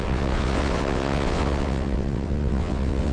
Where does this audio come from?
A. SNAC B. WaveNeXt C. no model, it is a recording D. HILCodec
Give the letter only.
B